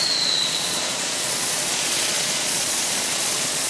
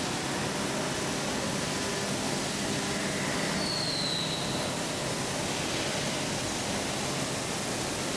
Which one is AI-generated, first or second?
first